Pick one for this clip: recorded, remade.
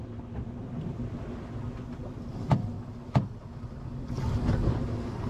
recorded